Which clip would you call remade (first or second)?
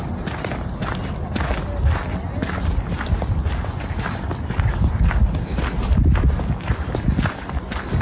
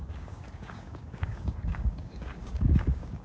second